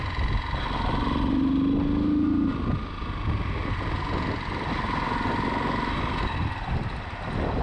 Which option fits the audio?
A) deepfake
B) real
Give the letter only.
B